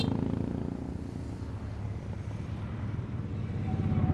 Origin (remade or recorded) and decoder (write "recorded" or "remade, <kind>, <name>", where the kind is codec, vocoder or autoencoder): recorded